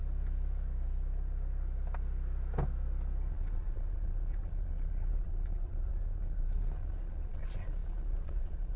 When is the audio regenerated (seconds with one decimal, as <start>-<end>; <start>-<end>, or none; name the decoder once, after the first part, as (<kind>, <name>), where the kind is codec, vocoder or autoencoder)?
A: 3.3-8.8 (vocoder, Vocos)